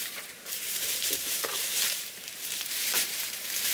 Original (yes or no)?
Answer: no